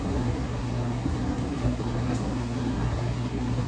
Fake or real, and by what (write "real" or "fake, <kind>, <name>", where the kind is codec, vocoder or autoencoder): fake, codec, SNAC